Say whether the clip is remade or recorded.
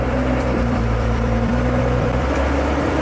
remade